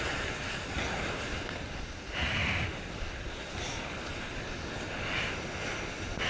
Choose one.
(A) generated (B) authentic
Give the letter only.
B